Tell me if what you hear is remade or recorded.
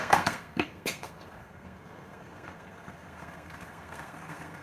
remade